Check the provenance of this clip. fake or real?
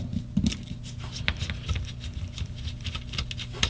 real